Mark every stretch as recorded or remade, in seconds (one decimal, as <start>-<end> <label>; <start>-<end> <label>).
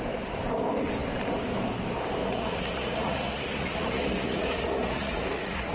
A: 0.0-2.2 recorded; 2.2-5.7 remade